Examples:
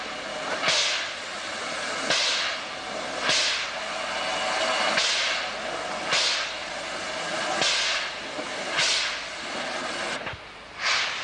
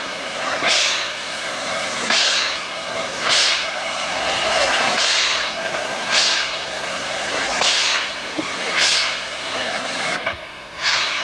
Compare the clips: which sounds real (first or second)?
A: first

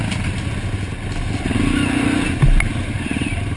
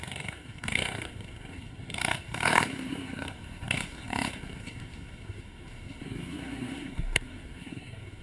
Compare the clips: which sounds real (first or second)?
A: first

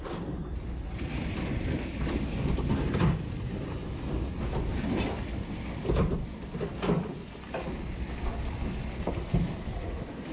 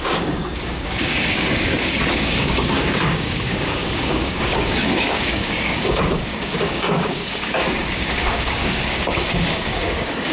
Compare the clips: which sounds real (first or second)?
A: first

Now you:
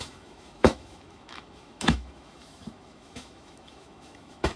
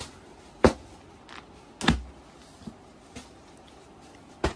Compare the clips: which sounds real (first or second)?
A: second